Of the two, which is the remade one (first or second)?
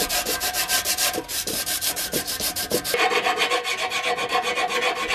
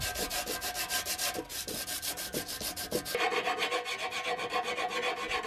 first